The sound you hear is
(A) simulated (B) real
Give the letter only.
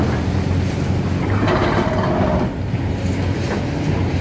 B